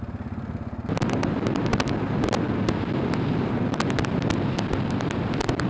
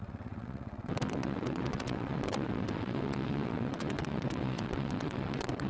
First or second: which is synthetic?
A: second